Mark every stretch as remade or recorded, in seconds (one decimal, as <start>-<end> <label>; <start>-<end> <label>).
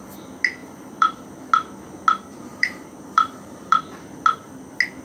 0.0-0.6 recorded; 0.6-1.3 remade; 1.3-2.5 recorded; 2.5-3.8 remade; 3.8-5.0 recorded